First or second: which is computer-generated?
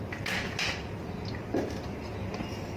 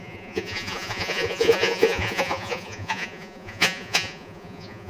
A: second